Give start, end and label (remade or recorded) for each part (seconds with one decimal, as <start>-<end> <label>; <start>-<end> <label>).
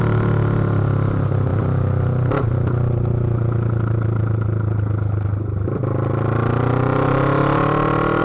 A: 0.0-8.2 recorded